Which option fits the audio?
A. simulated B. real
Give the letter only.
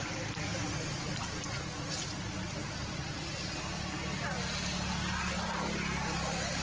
B